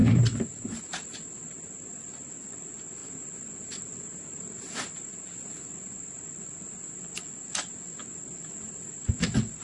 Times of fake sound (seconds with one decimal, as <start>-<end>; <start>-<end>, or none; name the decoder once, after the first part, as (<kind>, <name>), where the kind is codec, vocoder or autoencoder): none